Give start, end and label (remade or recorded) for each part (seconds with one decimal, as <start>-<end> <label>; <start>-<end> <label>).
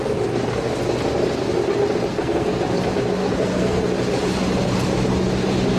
0.0-2.1 recorded; 2.1-2.6 remade; 2.6-3.2 recorded; 3.2-3.8 remade; 3.8-5.8 recorded